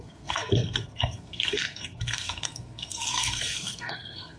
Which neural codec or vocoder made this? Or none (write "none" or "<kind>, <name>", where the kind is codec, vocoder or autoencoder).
codec, SNAC